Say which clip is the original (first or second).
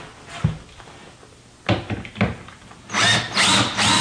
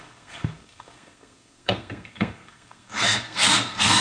first